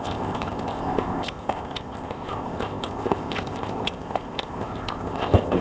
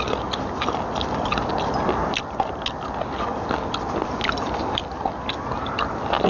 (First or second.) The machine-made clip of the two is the first